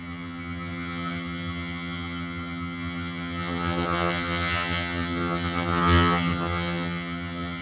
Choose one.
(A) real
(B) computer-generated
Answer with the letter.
B